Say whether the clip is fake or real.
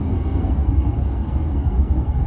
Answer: fake